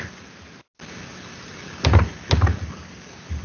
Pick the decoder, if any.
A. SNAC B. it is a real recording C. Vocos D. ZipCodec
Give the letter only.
B